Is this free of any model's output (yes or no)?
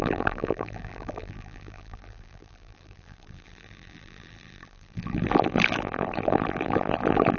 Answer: no